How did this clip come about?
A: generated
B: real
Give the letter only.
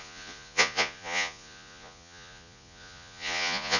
A